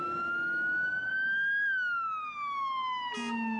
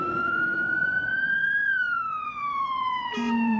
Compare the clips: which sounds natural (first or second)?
first